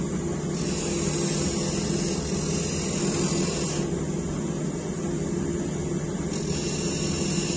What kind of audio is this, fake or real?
real